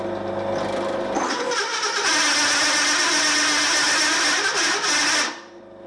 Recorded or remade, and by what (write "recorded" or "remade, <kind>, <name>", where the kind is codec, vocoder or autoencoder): recorded